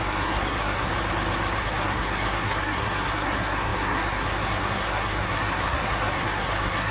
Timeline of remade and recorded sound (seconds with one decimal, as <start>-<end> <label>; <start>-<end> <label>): 0.0-0.9 remade; 0.9-1.6 recorded; 1.6-6.9 remade